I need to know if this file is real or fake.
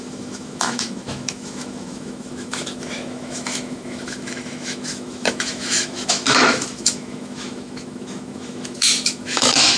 fake